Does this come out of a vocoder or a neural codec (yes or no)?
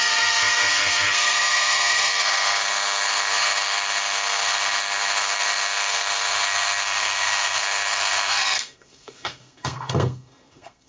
yes